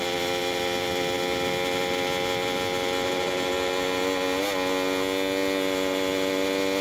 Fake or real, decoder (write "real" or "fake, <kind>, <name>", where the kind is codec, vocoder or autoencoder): real